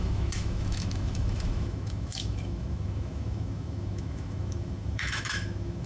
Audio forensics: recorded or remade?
remade